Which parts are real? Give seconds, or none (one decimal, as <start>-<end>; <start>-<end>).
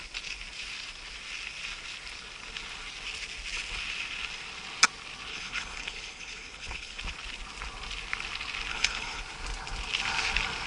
0.0-5.3; 7.0-8.7; 9.2-10.7